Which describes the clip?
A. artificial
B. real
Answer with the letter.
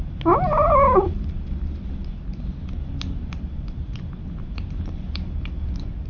B